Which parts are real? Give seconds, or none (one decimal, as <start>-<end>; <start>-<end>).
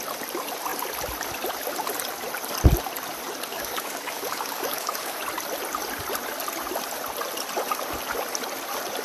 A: 0.0-3.5; 5.2-9.0